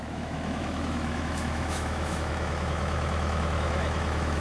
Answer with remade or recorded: remade